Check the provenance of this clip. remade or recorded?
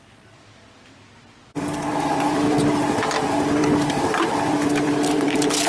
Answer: remade